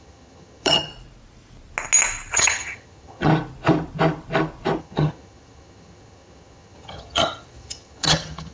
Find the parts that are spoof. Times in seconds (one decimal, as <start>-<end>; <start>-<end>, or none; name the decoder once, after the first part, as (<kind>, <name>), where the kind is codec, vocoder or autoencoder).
0.0-0.9 (vocoder, HiFi-GAN); 2.3-3.3; 4.8-8.5